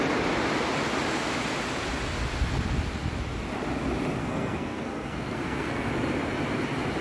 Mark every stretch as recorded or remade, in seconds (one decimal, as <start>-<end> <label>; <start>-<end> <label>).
0.0-4.2 recorded; 4.2-5.9 remade; 5.9-7.0 recorded